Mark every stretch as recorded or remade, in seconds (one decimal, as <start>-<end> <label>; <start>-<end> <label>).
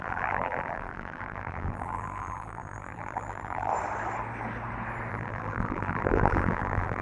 0.0-3.7 remade; 3.7-5.1 recorded; 5.1-7.0 remade